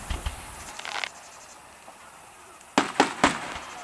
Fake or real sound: real